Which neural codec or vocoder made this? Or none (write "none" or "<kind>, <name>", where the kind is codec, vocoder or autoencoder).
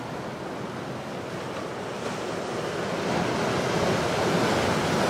none